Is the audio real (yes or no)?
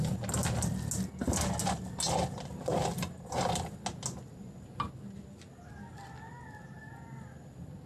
yes